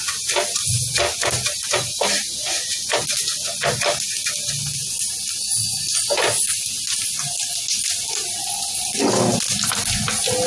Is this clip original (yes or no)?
yes